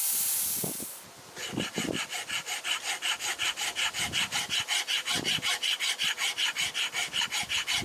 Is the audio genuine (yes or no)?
yes